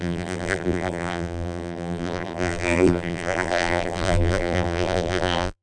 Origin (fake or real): fake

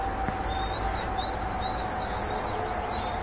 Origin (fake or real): real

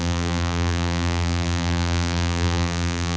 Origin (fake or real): fake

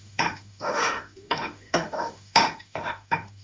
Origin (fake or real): fake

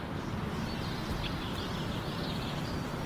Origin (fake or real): real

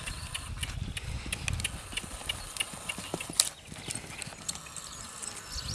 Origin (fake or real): real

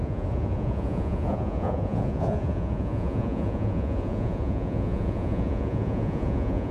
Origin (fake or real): fake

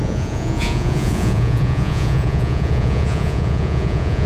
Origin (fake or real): fake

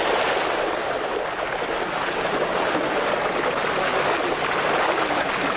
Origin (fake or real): real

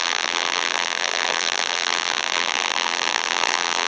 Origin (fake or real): fake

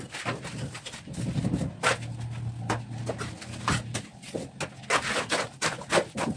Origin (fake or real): real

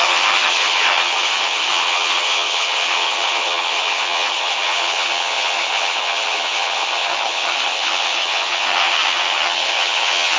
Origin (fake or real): fake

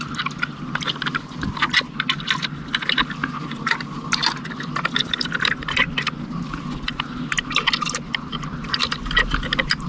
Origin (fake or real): real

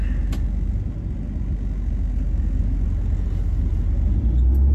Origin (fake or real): real